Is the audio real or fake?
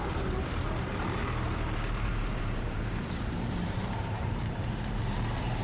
fake